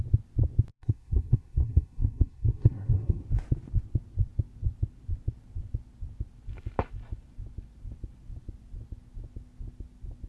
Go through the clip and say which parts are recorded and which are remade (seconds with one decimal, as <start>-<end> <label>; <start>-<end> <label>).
0.0-0.7 recorded; 0.7-3.2 remade; 3.2-10.3 recorded